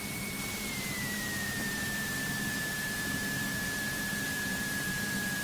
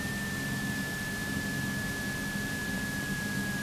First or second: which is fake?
first